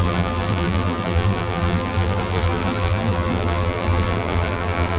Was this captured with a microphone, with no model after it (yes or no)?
no